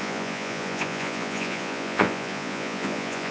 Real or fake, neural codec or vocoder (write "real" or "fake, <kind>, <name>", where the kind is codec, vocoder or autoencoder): fake, vocoder, Vocos